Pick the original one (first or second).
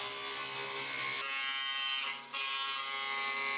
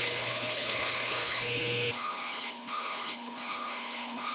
first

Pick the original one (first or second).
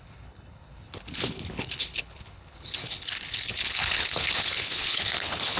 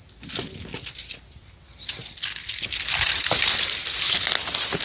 second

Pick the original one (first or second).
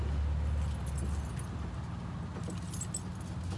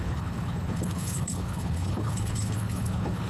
first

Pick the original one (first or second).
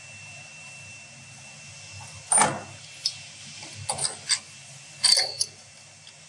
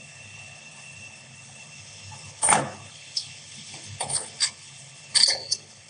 first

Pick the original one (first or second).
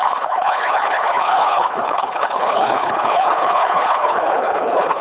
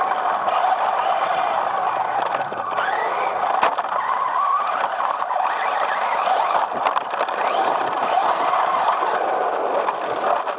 second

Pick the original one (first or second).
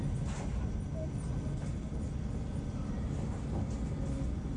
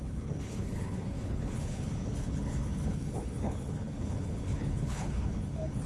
first